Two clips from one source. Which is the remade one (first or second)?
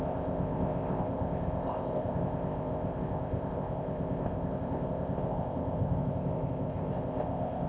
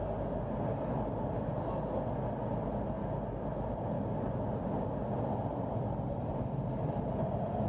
first